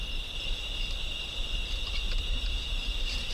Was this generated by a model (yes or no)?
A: no